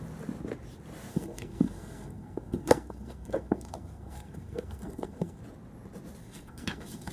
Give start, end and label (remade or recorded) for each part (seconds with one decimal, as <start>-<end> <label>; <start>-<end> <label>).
0.0-1.1 recorded; 1.1-5.4 remade; 5.4-6.2 recorded; 6.2-7.1 remade